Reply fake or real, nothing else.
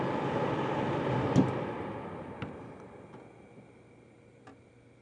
real